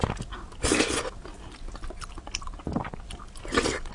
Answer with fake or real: real